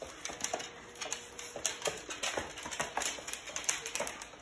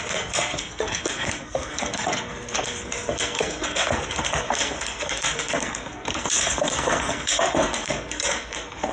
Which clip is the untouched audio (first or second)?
first